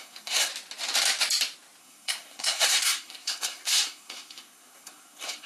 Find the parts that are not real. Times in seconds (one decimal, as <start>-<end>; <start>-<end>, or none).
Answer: 0.0-0.5; 1.8-5.5